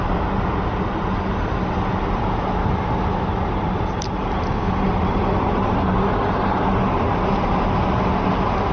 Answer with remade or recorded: recorded